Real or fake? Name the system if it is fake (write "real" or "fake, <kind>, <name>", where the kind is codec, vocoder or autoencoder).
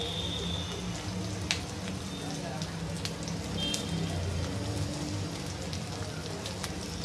real